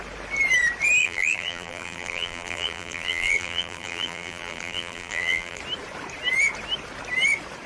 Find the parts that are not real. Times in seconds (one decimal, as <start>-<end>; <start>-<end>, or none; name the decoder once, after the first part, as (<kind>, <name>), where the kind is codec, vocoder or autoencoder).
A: 1.0-5.6 (vocoder, BigVGAN v2)